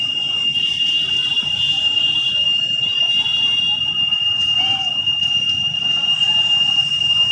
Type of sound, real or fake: fake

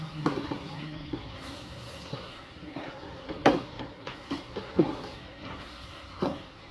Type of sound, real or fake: fake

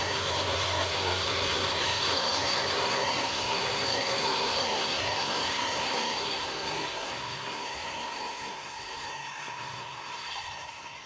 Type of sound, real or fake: fake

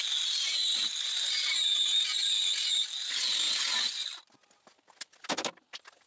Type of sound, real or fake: real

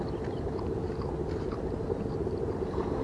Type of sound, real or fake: real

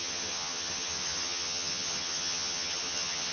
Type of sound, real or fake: fake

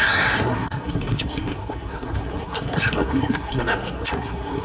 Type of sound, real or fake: fake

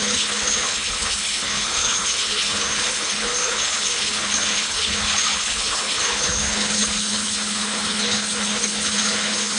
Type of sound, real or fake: fake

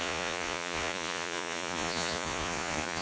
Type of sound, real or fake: fake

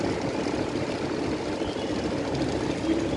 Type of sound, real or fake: real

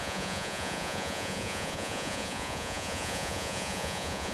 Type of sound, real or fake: fake